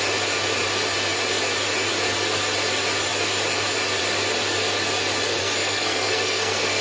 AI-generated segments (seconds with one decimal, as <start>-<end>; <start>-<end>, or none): 5.4-6.8